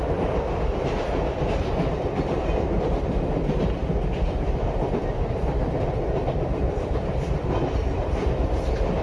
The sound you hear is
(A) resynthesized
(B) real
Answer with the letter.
B